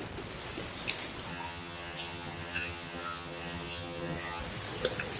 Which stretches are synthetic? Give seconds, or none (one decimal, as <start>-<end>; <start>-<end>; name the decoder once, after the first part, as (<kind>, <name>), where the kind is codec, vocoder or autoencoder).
1.3-4.4 (vocoder, HiFi-GAN)